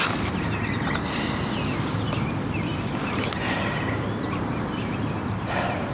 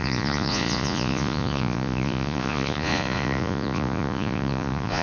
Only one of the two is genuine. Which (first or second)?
first